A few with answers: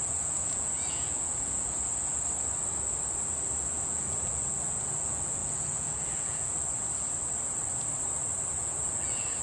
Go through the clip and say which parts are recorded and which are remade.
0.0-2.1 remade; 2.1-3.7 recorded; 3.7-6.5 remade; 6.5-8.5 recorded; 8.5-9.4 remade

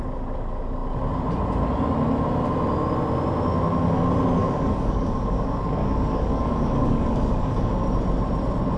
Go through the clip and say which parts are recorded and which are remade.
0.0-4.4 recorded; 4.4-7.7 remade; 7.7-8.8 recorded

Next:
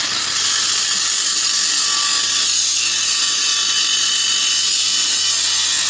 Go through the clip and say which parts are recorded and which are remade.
0.0-3.5 remade; 3.5-5.9 recorded